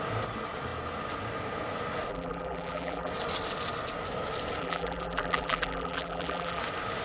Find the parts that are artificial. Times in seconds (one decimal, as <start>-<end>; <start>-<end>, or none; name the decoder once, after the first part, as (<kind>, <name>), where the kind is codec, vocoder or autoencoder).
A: 2.1-3.1 (vocoder, BigVGAN v2); 4.6-6.6